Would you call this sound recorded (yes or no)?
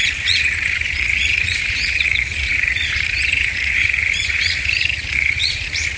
no